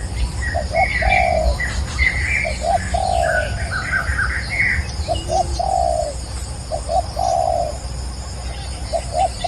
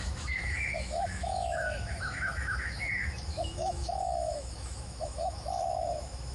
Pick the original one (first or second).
first